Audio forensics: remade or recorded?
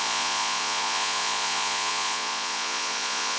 remade